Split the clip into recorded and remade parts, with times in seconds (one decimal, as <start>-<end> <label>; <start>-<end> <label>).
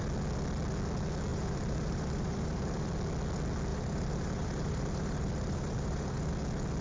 0.0-1.3 recorded; 1.3-2.9 remade; 2.9-3.7 recorded; 3.7-6.3 remade; 6.3-6.8 recorded